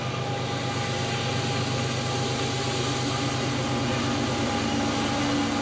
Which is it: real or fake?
real